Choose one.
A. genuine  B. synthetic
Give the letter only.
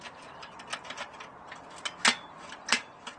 A